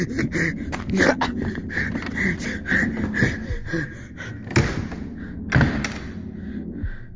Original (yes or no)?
yes